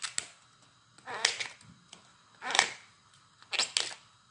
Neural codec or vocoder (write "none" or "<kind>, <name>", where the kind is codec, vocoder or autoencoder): none